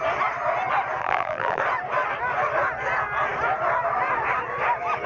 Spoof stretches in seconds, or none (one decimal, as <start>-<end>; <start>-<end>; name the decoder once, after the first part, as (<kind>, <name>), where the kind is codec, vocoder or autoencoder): 1.0-1.6 (vocoder, BigVGAN v2)